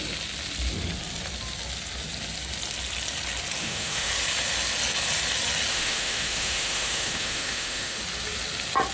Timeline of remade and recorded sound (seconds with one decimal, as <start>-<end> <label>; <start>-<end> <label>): 0.0-3.6 recorded; 3.6-4.1 remade; 4.1-5.7 recorded; 5.7-8.0 remade; 8.0-8.9 recorded